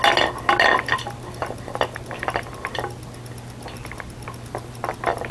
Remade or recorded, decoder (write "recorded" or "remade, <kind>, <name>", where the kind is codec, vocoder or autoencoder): recorded